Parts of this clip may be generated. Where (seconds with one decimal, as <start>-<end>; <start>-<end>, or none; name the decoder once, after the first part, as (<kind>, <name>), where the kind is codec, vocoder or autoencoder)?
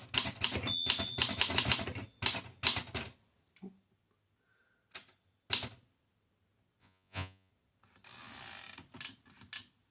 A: 6.8-7.5 (vocoder, Vocos)